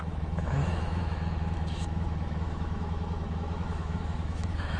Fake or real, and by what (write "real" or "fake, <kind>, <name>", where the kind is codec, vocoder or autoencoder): fake, autoencoder, DAC-VAE